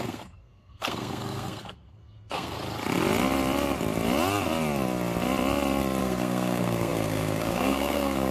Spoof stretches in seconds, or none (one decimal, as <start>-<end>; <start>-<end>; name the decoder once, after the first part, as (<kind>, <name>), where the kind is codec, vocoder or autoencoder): 0.0-2.6 (codec, SNAC); 6.0-8.3

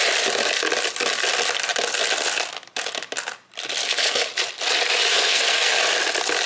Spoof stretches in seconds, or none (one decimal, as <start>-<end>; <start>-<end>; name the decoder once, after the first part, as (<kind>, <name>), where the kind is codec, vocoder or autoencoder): 3.8-4.3 (codec, SNAC); 5.1-5.8

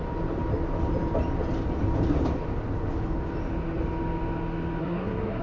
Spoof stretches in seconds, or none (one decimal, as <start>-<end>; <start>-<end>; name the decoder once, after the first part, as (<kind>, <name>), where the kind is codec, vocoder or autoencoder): 4.8-5.4 (codec, SNAC)

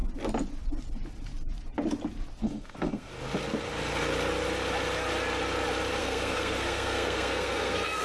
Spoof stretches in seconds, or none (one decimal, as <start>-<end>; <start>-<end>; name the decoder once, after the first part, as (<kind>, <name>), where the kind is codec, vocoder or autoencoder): 2.4-3.1 (codec, SNAC); 6.0-8.0

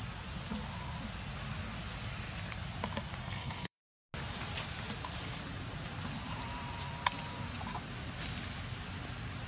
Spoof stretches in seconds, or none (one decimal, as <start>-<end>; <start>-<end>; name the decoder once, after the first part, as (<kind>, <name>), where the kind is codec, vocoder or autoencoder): 3.2-3.8 (codec, SNAC)